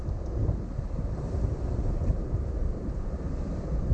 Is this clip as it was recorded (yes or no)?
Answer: no